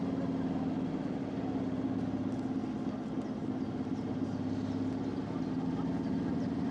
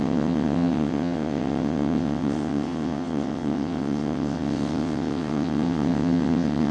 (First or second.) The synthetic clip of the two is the second